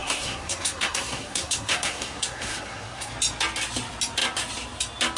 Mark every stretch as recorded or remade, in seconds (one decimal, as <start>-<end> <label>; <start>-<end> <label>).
0.0-3.1 remade; 3.1-5.2 recorded